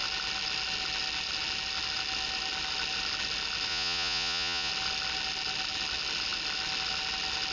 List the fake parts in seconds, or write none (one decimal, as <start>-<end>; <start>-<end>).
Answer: 3.7-4.7